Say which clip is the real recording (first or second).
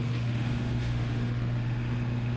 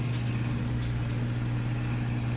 second